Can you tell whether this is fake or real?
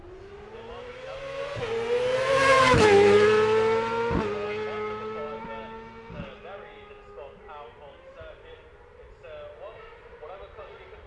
real